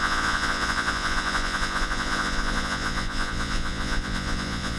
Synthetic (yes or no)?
yes